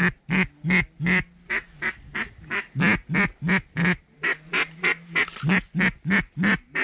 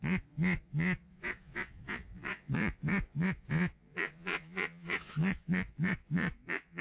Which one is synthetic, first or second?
second